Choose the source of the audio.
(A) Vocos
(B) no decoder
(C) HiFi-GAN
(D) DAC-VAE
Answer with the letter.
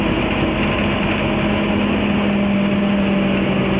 B